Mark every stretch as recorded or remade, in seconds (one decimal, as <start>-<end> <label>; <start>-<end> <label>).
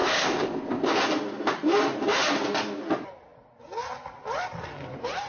0.0-0.9 remade; 0.9-5.3 recorded